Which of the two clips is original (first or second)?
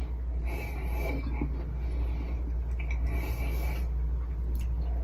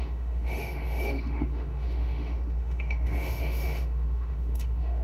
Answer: first